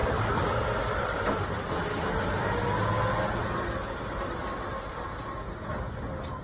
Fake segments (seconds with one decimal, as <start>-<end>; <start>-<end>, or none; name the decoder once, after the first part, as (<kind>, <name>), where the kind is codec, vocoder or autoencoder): none